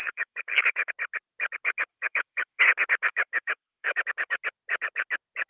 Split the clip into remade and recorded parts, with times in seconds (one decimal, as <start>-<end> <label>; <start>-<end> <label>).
0.0-0.9 remade; 0.9-1.9 recorded; 1.9-2.6 remade; 2.6-3.1 recorded; 3.1-4.0 remade; 4.0-5.5 recorded